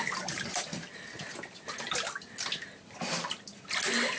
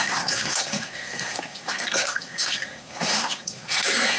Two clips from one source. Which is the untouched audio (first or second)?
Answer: first